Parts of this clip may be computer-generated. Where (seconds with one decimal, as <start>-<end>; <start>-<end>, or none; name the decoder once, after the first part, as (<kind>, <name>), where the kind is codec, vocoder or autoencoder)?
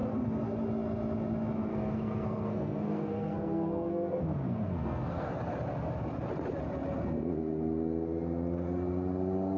1.7-5.3 (codec, SNAC)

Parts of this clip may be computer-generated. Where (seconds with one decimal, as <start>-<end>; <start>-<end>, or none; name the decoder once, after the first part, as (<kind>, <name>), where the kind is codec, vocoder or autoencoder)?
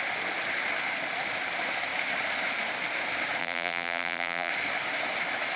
3.4-4.5 (vocoder, BigVGAN v2)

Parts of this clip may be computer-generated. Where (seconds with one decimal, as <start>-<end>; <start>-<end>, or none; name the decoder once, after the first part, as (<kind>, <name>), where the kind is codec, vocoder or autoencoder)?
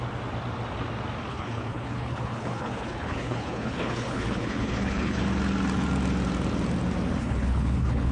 1.3-5.2 (codec, HILCodec); 7.2-8.1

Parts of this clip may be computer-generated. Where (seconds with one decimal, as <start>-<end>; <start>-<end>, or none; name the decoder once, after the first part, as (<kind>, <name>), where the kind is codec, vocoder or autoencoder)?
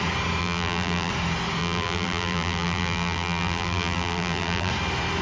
0.4-1.1 (vocoder, BigVGAN v2); 1.6-4.7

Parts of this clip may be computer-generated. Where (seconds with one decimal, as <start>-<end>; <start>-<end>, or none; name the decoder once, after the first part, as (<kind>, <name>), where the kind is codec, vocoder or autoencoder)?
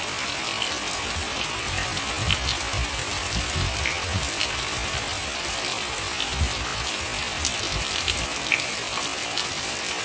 none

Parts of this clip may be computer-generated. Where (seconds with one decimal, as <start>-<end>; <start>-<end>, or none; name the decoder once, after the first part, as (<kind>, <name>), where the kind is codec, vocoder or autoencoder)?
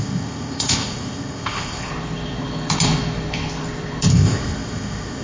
0.0-1.9 (codec, ZipCodec); 4.1-5.2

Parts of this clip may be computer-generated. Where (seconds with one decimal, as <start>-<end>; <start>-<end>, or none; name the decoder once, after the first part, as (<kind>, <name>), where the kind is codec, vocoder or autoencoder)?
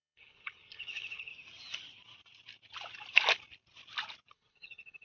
0.0-1.3 (codec, HILCodec); 4.3-5.0